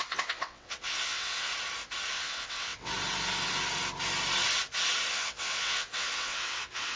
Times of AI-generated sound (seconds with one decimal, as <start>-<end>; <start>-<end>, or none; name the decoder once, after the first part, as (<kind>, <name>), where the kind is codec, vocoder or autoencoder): 0.0-1.5 (vocoder, WaveNeXt); 2.1-2.9; 5.1-7.0